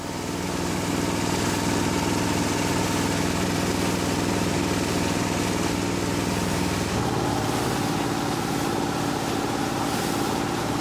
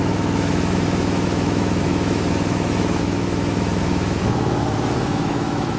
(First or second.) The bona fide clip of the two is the first